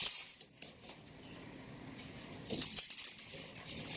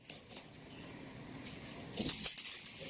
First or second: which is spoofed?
first